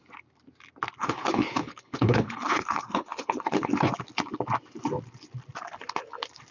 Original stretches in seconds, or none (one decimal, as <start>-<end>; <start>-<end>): 0.0-1.0; 3.9-6.5